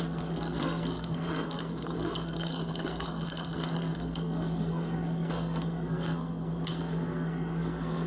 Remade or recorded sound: remade